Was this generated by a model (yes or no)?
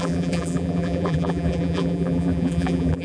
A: yes